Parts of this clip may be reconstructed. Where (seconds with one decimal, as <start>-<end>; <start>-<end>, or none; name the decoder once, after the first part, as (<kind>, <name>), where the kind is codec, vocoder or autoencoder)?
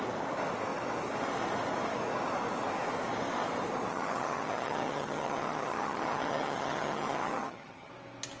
3.9-7.9 (vocoder, HiFi-GAN)